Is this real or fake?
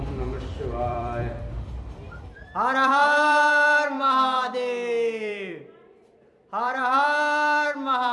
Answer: fake